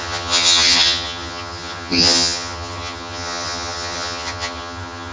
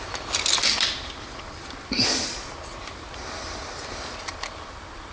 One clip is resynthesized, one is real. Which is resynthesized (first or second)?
first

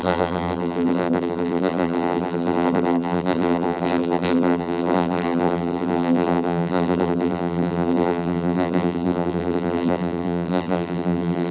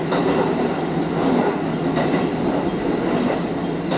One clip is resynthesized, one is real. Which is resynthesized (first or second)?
first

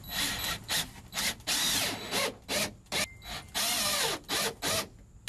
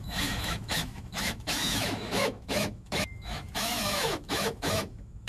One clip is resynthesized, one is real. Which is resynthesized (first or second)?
second